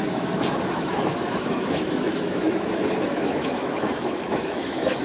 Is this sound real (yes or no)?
no